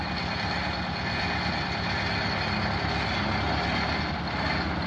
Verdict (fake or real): real